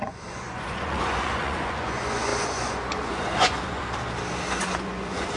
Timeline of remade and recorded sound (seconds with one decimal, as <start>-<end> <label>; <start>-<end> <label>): 0.0-3.8 remade; 3.8-4.5 recorded; 4.5-5.4 remade